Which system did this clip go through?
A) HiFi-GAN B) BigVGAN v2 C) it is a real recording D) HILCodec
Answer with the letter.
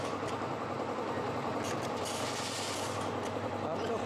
B